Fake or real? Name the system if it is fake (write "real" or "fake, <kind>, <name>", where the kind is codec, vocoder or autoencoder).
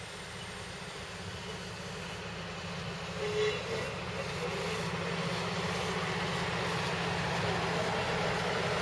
real